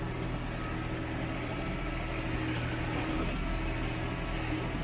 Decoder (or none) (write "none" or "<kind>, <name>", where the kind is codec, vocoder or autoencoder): none